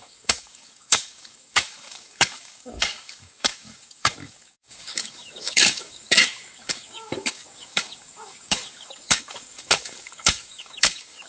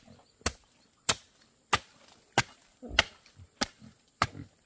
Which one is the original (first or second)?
second